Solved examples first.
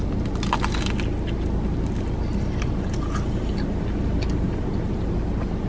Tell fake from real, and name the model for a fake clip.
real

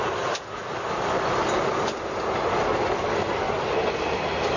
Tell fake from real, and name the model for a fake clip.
real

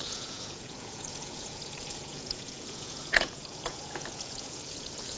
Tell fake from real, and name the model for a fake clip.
fake, vocoder, Vocos